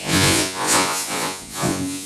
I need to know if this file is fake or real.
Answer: fake